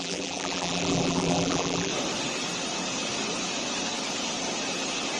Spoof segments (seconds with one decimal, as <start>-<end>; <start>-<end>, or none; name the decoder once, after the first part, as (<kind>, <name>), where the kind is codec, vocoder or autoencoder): 0.0-1.9 (vocoder, BigVGAN v2)